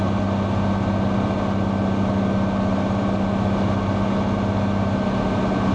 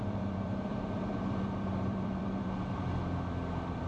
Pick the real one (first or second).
first